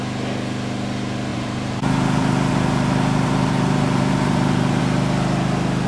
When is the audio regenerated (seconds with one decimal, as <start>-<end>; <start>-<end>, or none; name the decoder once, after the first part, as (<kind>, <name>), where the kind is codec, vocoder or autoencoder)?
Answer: 1.3-4.8 (vocoder, BigVGAN v2)